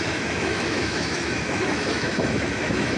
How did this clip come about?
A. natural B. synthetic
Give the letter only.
B